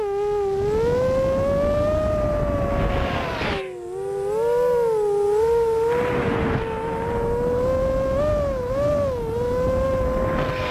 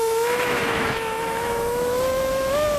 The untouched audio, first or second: first